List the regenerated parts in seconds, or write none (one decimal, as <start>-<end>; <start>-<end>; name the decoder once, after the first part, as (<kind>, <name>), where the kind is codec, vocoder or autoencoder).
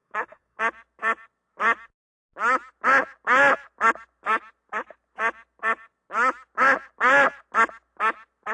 0.0-0.6 (codec, SNAC)